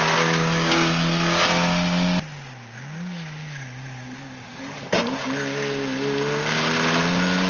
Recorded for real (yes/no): yes